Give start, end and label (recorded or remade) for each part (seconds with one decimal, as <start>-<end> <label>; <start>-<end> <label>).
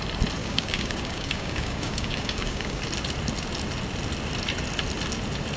0.0-0.4 recorded; 0.4-2.8 remade; 2.8-5.6 recorded